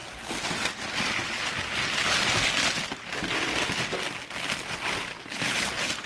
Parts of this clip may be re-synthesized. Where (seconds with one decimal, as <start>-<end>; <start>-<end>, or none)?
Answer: none